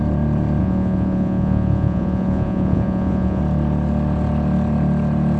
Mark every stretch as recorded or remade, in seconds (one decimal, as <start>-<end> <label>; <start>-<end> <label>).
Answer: 0.0-0.6 recorded; 0.6-3.4 remade; 3.4-5.4 recorded